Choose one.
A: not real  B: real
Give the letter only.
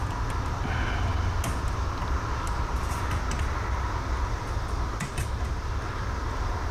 B